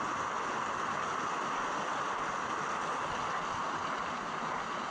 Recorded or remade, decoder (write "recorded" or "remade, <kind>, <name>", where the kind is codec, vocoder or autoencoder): recorded